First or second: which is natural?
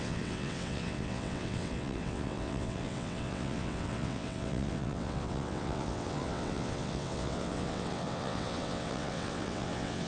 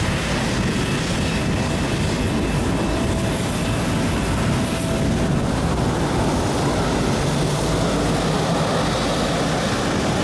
second